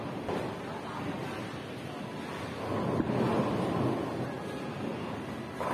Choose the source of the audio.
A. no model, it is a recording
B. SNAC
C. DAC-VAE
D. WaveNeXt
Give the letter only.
A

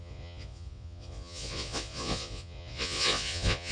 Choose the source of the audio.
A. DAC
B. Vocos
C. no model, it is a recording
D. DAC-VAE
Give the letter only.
B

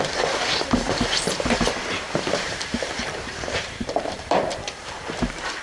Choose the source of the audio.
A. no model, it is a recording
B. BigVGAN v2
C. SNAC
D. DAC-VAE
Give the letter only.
B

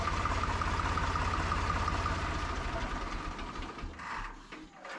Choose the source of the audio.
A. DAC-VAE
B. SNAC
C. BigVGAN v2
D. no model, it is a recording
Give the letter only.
D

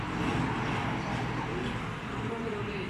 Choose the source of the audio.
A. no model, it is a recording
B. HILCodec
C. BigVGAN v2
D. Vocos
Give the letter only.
C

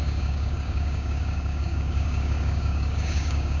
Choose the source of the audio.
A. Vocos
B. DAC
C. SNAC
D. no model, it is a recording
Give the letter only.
B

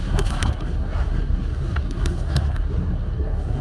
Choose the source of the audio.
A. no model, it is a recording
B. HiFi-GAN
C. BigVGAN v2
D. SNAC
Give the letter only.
D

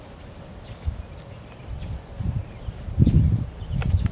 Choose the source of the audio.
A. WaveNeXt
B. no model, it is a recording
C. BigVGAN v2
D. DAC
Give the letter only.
C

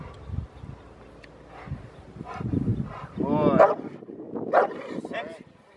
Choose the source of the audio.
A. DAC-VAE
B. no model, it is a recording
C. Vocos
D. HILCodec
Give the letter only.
B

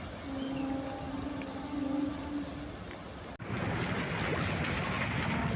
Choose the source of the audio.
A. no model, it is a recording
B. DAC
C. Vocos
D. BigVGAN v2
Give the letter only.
A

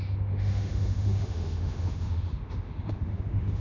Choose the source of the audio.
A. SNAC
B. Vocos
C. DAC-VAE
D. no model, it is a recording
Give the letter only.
C